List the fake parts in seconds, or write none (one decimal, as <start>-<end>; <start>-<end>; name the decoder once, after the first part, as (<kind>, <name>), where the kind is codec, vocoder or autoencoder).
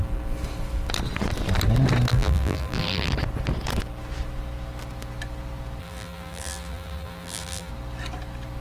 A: 2.1-3.1 (vocoder, BigVGAN v2); 5.8-7.7